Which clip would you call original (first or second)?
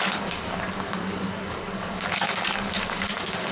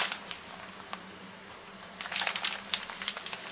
second